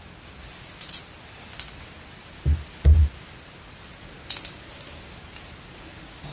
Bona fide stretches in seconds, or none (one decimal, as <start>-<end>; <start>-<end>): 0.0-6.3